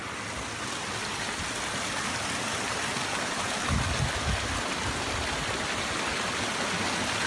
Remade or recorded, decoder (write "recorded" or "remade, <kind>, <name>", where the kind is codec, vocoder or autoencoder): recorded